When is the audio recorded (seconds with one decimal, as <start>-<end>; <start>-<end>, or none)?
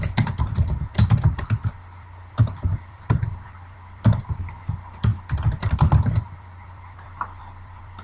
5.1-5.9